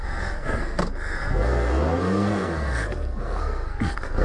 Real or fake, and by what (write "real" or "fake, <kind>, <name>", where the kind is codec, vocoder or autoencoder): fake, codec, SNAC